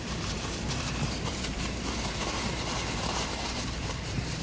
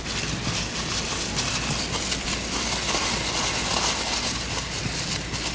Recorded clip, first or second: second